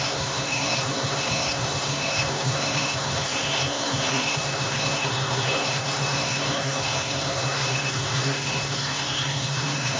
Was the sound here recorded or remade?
remade